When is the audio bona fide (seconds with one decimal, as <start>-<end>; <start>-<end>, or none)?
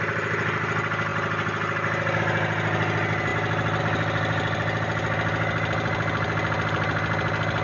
0.0-7.6